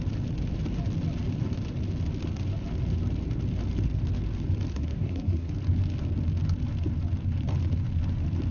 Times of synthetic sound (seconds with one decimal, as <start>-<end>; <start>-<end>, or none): 4.7-5.5

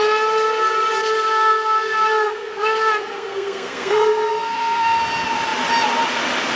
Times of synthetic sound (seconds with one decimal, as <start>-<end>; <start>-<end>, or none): 1.0-5.0

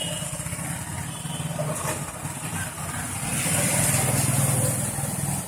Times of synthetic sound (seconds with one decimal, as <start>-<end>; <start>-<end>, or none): none

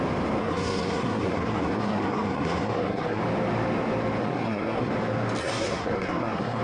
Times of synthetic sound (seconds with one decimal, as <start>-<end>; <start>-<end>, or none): 0.4-3.2; 4.2-4.9; 5.4-6.6

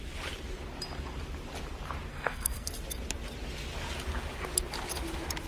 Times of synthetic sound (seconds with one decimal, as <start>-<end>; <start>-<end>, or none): 2.1-2.7

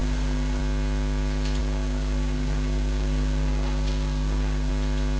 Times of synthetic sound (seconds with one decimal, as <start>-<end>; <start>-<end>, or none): 0.0-0.6; 1.6-4.7